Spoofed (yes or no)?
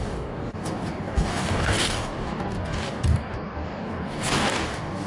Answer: yes